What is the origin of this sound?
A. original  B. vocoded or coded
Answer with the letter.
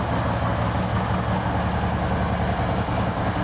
A